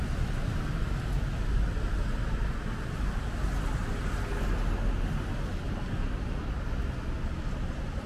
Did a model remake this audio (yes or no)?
no